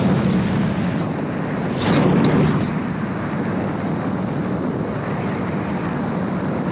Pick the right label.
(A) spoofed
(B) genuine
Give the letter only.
B